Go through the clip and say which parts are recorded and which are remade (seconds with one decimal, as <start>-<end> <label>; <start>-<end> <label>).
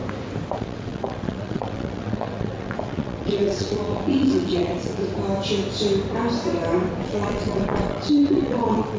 0.0-0.6 recorded; 0.6-5.0 remade; 5.0-7.0 recorded; 7.0-9.0 remade